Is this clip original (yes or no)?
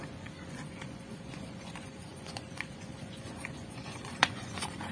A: no